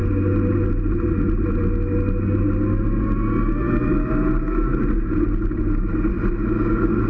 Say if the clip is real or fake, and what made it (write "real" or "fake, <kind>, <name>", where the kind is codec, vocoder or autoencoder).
real